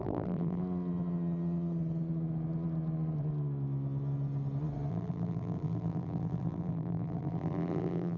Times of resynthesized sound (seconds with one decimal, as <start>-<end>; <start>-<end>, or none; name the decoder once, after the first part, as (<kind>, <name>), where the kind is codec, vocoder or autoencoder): 0.0-0.6 (vocoder, BigVGAN v2); 4.9-8.2